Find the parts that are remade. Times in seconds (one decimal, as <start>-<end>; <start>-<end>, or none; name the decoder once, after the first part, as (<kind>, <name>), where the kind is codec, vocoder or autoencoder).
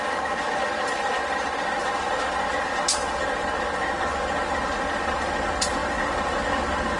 none